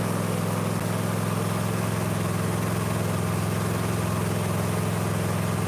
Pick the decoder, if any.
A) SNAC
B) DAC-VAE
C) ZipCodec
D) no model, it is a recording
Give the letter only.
D